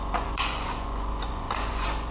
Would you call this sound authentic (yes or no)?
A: no